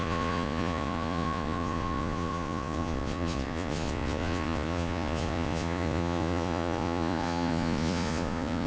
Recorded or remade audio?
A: remade